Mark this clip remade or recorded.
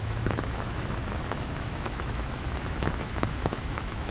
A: remade